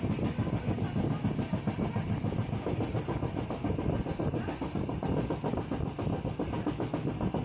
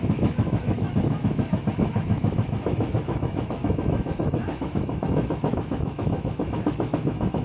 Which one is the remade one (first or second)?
second